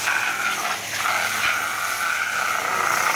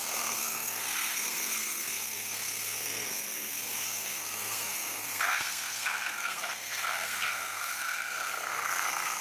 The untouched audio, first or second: first